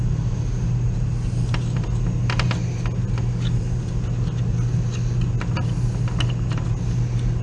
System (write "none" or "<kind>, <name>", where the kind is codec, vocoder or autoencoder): none